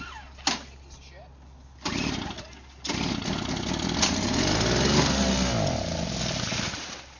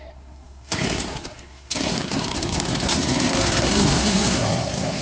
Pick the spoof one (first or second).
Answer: second